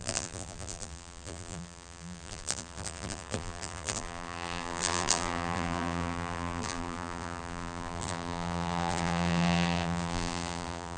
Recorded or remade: remade